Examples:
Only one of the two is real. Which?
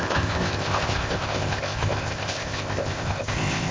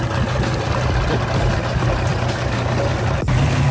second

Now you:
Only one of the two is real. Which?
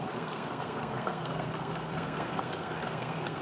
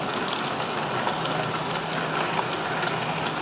second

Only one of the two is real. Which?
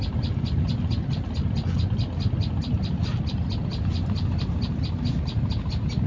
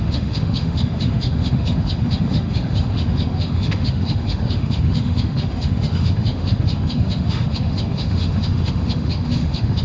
first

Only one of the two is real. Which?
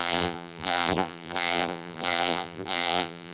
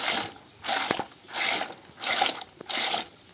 second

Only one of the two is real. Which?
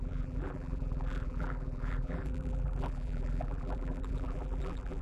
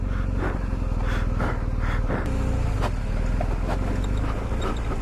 second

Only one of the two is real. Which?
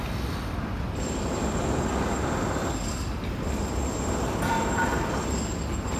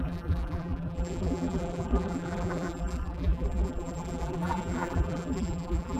first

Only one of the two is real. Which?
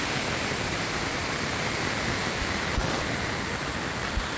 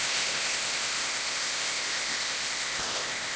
first